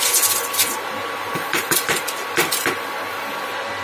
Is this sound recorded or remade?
recorded